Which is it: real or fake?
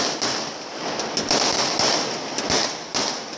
real